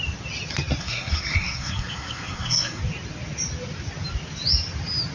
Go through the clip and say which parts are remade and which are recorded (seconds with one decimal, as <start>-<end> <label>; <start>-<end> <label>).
0.0-0.8 recorded; 0.8-2.8 remade; 2.8-5.1 recorded